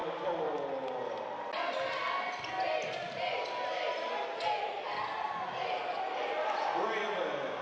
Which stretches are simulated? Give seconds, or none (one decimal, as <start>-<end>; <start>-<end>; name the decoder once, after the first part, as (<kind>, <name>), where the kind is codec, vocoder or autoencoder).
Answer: none